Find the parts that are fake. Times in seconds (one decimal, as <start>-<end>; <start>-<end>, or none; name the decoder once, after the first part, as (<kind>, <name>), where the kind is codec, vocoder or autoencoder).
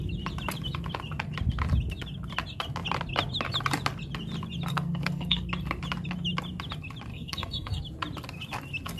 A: 4.7-5.5 (codec, SNAC); 7.1-7.8